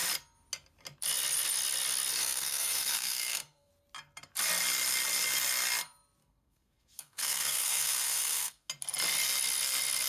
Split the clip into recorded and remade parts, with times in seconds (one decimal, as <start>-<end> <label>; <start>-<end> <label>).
0.0-2.2 recorded; 2.2-3.7 remade; 3.7-6.2 recorded; 6.2-8.7 remade; 8.7-10.1 recorded